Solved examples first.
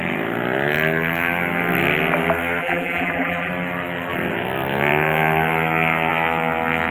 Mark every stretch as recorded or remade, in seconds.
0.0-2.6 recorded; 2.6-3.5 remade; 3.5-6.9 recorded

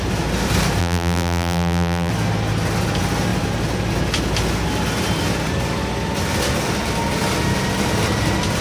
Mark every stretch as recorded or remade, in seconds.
0.0-0.8 recorded; 0.8-2.1 remade; 2.1-8.6 recorded

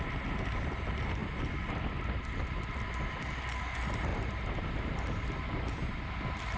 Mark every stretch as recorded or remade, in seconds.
0.0-4.1 recorded; 4.1-6.1 remade; 6.1-6.6 recorded

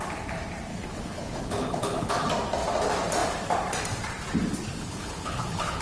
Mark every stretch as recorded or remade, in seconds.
0.0-0.7 recorded; 0.7-2.1 remade; 2.1-4.8 recorded; 4.8-5.8 remade

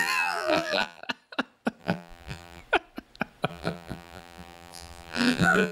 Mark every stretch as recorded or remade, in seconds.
0.0-1.0 remade; 1.0-1.8 recorded; 1.8-2.6 remade; 2.6-3.5 recorded; 3.5-5.7 remade